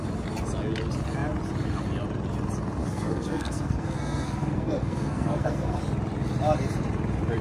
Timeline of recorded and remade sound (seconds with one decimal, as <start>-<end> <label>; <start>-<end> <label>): 0.0-2.8 recorded; 2.8-5.8 remade; 5.8-7.4 recorded